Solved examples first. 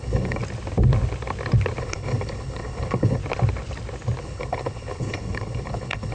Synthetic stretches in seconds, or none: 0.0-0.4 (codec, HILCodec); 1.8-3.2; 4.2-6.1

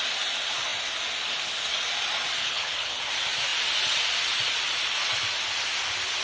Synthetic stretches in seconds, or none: 2.4-3.0 (codec, HILCodec)